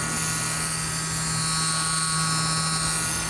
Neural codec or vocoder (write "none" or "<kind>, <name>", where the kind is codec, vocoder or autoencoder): none